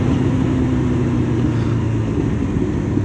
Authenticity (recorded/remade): recorded